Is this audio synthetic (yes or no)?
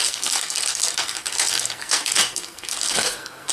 yes